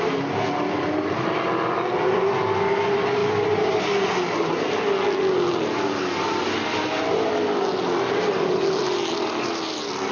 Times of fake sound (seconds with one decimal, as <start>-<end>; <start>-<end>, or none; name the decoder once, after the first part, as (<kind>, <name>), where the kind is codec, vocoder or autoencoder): none